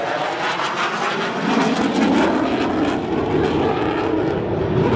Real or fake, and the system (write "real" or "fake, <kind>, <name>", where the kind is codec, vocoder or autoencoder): real